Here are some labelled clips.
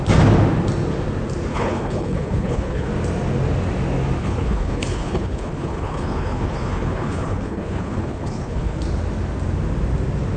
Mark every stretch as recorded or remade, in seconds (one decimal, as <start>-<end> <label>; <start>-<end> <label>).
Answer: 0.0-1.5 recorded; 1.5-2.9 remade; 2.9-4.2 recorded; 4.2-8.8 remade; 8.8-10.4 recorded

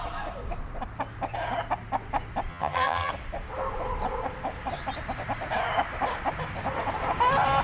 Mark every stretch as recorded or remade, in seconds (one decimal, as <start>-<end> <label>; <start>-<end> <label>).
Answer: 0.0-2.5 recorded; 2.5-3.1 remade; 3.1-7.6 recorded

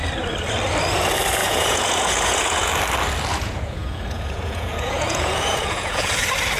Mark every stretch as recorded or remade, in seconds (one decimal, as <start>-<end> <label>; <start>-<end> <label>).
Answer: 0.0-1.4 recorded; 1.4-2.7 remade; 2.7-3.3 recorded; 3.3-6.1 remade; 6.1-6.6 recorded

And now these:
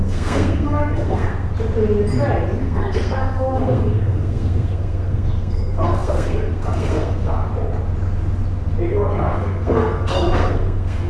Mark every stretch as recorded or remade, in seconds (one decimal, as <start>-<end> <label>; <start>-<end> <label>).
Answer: 0.0-1.5 remade; 1.5-2.6 recorded; 2.6-7.5 remade; 7.5-8.9 recorded; 8.9-11.1 remade

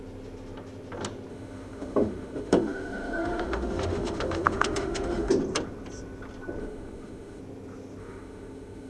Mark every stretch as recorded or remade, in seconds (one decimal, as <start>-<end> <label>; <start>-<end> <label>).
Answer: 0.0-1.3 recorded; 1.3-5.3 remade; 5.3-6.6 recorded; 6.6-7.4 remade; 7.4-8.0 recorded; 8.0-8.9 remade